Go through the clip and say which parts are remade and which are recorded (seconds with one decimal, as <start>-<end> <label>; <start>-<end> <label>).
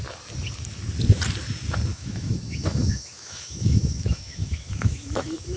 0.0-1.9 recorded; 1.9-5.6 remade